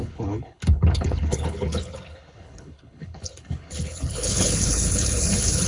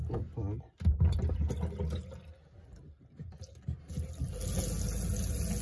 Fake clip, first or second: first